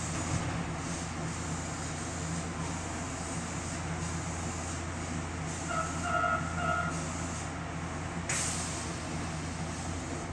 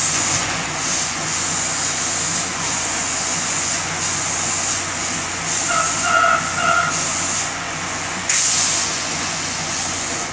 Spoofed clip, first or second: second